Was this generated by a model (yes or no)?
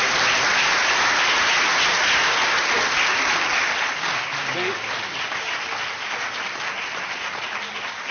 no